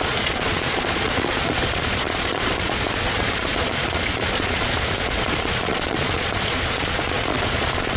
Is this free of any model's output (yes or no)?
no